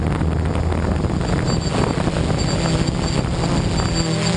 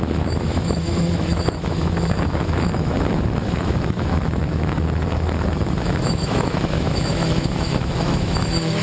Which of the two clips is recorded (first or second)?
first